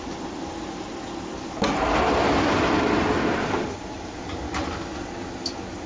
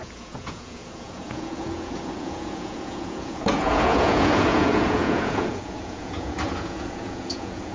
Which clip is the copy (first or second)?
second